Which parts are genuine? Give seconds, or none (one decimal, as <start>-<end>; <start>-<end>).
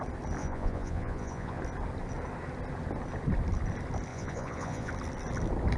0.0-0.4; 1.6-4.1; 4.9-5.8